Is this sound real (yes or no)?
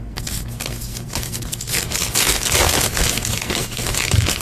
no